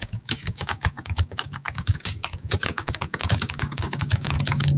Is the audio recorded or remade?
remade